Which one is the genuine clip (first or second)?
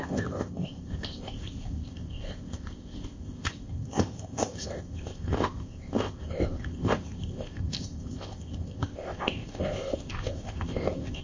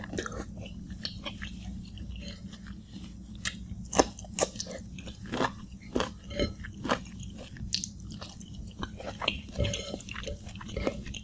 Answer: second